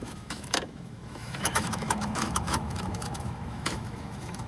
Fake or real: fake